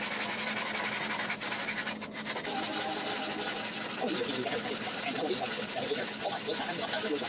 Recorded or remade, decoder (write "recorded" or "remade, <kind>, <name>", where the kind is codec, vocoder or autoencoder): recorded